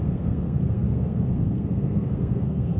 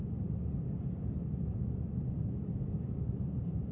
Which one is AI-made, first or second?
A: first